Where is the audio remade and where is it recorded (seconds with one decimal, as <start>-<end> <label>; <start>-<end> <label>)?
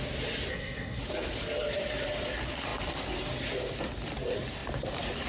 0.0-0.5 recorded; 0.5-1.0 remade; 1.0-5.3 recorded